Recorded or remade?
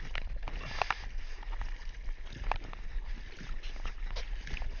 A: recorded